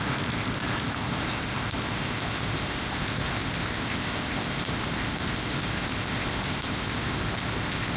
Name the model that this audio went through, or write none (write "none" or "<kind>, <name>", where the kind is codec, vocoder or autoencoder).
codec, ZipCodec